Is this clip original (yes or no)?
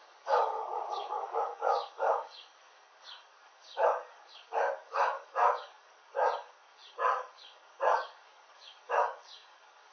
no